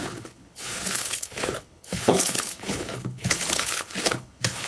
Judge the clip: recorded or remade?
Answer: remade